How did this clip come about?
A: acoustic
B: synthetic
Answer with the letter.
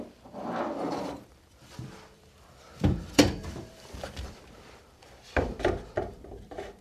B